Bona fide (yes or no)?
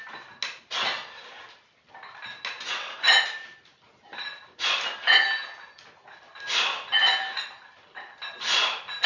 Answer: yes